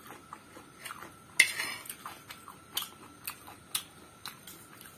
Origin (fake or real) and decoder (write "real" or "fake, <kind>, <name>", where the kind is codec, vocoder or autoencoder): real